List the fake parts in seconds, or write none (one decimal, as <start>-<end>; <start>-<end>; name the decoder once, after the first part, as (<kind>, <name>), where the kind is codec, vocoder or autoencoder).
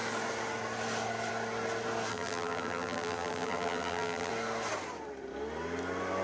2.1-4.3 (vocoder, BigVGAN v2)